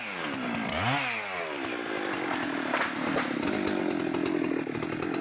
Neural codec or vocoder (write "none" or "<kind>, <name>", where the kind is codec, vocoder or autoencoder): none